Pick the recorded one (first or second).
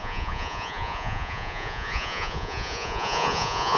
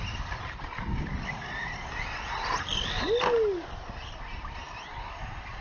second